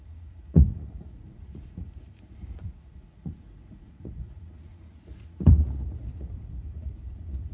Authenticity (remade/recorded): remade